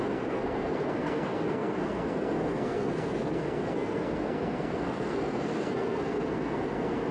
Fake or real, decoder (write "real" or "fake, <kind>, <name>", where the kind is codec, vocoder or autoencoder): fake, codec, SNAC